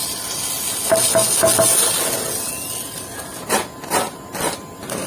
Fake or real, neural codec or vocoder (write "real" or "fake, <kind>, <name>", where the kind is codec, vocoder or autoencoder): real